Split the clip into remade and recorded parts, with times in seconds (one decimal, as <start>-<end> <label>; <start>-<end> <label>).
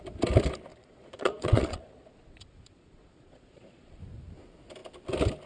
0.0-0.7 recorded; 0.7-4.0 remade; 4.0-5.5 recorded